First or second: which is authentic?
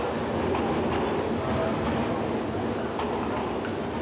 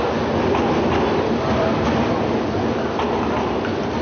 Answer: first